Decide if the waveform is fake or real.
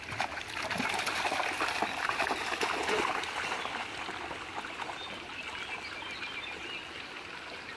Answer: real